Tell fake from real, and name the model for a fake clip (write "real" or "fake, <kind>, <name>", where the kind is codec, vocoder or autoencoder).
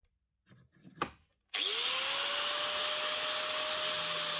real